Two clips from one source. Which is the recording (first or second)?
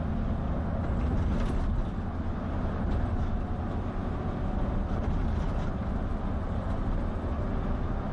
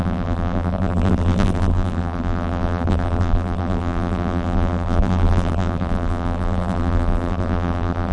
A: first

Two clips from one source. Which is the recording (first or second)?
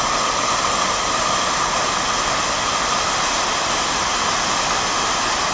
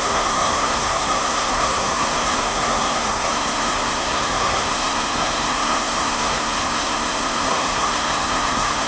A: first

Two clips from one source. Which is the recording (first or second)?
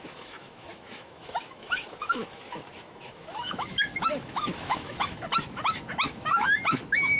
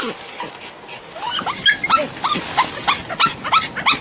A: second